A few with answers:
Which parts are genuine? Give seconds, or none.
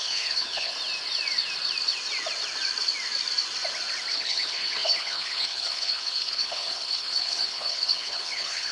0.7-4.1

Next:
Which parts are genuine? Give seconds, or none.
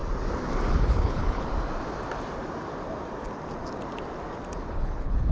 0.0-0.7; 1.5-4.7